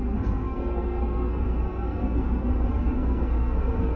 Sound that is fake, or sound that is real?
fake